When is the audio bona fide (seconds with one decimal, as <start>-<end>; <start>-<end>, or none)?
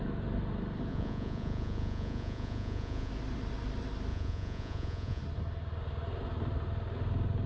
0.0-0.9; 3.1-4.1; 5.2-7.5